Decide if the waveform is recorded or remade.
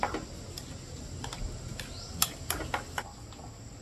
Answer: recorded